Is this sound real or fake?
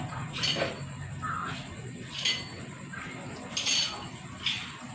real